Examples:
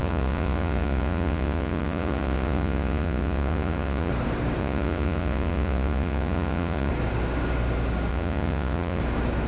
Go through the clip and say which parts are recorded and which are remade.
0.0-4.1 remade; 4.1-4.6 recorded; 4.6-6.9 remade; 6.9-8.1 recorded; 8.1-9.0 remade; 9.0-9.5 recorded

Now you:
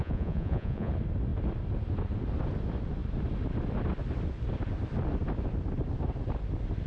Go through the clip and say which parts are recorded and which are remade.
0.0-0.9 remade; 0.9-6.9 recorded

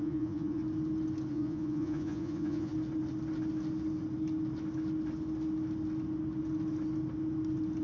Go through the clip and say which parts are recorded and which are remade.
0.0-0.6 remade; 0.6-1.3 recorded; 1.3-2.7 remade; 2.7-7.8 recorded

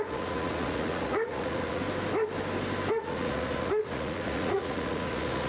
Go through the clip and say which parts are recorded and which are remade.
0.0-1.8 remade; 1.8-2.9 recorded; 2.9-5.5 remade

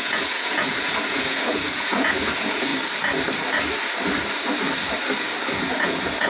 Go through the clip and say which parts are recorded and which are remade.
0.0-2.7 remade; 2.7-5.5 recorded; 5.5-6.3 remade

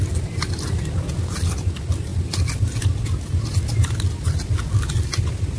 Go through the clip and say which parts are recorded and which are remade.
0.0-5.6 recorded